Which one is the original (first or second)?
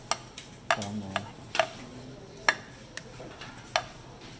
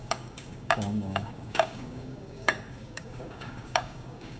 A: first